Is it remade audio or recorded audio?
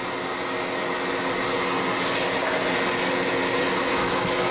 recorded